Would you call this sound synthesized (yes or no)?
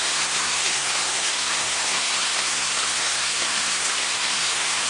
yes